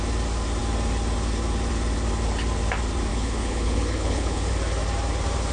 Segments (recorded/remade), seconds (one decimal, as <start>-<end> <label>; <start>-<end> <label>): 0.0-3.1 recorded; 3.1-4.5 remade; 4.5-5.5 recorded